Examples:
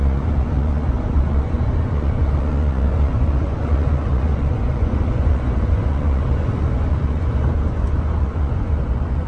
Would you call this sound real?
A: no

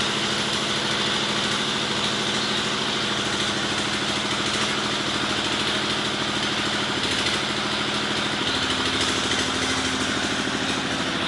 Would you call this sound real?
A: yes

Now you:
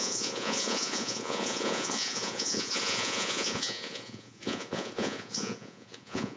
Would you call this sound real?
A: no